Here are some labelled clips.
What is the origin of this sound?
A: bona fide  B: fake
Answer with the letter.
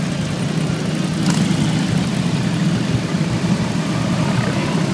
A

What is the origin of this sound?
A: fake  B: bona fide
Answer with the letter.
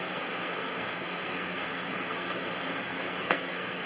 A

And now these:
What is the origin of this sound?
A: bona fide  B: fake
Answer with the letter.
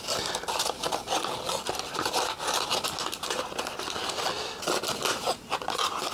A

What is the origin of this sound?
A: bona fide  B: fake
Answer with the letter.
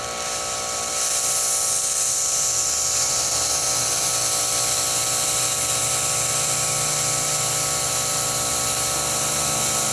A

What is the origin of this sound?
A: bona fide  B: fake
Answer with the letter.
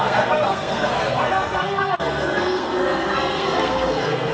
B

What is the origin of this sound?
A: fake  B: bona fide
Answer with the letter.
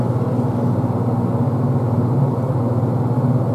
B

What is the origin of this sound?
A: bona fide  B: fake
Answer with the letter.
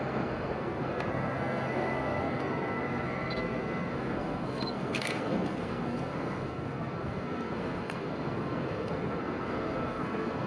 B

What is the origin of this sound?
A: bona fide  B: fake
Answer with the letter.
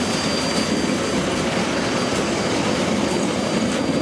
A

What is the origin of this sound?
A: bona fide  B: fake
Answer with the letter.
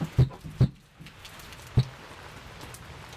A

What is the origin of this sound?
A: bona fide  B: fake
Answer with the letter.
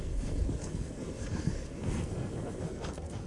B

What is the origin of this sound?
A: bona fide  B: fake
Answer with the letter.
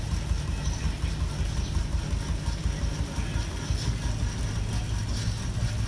A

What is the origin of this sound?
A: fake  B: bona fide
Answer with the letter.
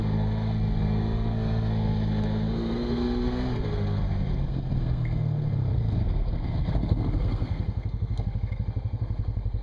A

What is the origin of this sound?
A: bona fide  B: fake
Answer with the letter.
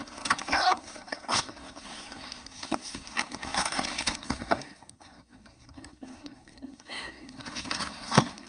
B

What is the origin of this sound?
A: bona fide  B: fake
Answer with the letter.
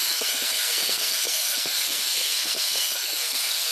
B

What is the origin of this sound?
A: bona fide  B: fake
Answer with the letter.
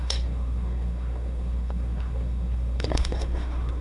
B